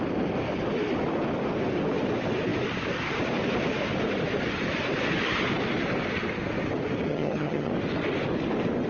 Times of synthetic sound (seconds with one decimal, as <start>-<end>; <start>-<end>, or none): 7.1-7.7